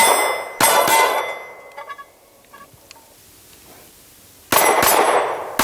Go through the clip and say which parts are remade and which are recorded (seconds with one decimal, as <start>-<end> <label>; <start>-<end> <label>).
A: 0.0-0.7 recorded; 0.7-1.2 remade; 1.2-5.6 recorded